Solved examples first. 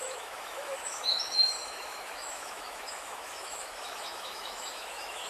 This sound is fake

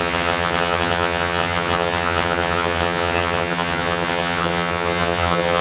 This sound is fake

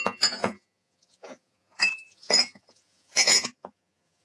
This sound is fake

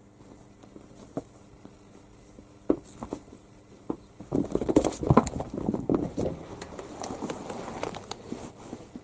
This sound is real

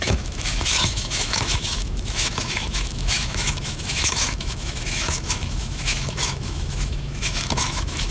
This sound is fake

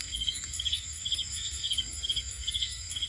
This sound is fake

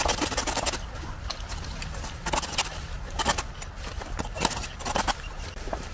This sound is real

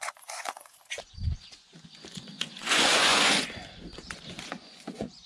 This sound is fake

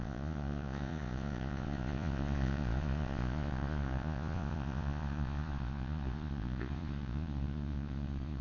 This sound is fake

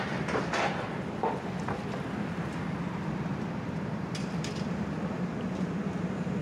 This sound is fake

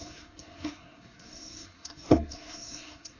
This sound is fake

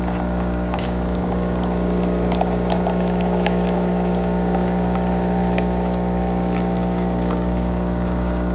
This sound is fake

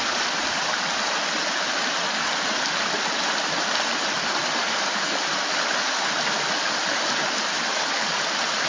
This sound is real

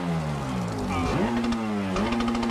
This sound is real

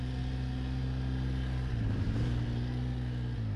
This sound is real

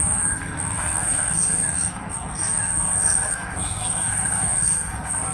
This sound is fake